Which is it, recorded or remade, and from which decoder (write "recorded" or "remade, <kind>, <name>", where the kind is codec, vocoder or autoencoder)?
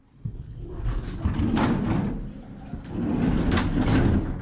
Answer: recorded